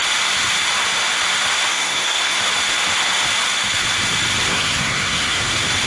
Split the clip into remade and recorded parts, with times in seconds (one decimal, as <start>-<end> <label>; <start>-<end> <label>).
0.0-1.7 recorded; 1.7-2.4 remade; 2.4-4.5 recorded; 4.5-5.5 remade; 5.5-5.9 recorded